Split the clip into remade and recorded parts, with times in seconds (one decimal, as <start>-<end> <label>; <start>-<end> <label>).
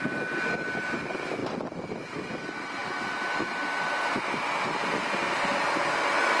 0.0-6.4 recorded